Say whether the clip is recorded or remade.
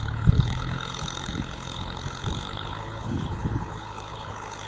remade